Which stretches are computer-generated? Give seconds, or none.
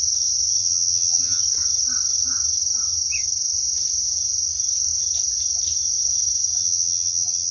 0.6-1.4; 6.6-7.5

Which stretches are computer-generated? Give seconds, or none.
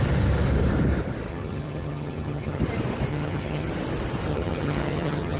1.3-2.6; 3.1-3.7; 4.3-5.4